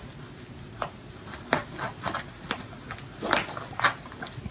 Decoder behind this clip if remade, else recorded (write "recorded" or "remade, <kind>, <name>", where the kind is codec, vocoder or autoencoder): recorded